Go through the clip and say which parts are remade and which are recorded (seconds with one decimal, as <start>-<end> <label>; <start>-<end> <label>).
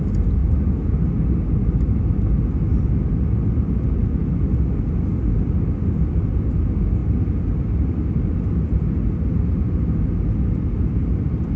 0.0-11.6 recorded